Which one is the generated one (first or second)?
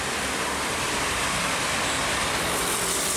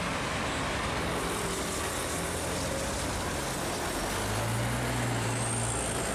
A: first